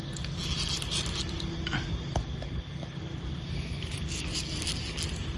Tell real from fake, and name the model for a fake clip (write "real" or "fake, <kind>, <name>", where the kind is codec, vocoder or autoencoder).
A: real